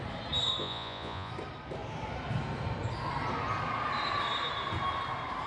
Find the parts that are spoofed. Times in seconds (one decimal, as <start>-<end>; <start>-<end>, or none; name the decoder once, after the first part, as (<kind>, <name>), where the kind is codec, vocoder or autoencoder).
0.6-1.3 (vocoder, Vocos)